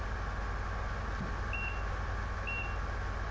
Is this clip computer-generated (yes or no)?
no